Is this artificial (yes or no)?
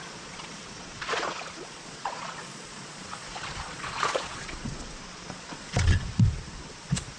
yes